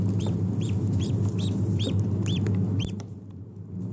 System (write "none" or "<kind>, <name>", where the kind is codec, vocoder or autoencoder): vocoder, BigVGAN v2